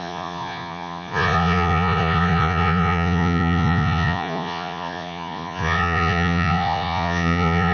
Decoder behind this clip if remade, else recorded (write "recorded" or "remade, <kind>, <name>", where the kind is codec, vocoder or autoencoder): remade, vocoder, Vocos